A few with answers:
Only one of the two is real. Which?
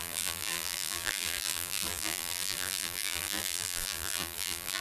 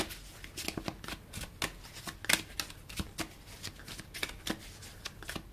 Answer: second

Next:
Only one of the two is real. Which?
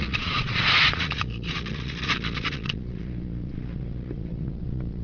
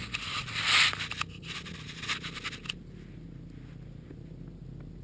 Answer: second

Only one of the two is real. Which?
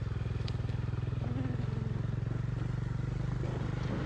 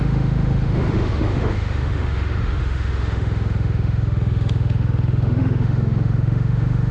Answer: first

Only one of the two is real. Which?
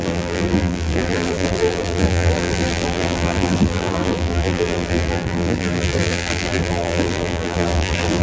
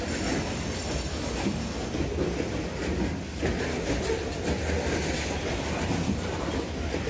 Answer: second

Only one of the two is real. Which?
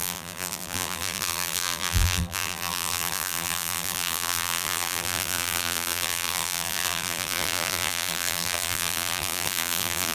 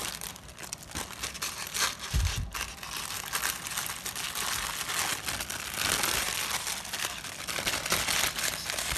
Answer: second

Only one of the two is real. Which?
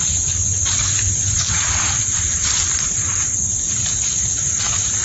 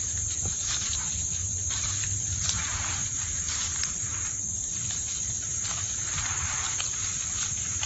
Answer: first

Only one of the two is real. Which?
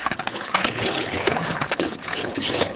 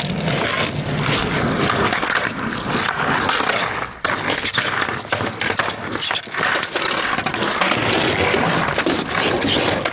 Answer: second